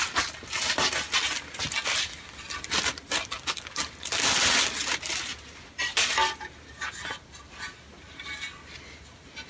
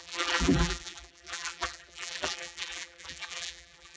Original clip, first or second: first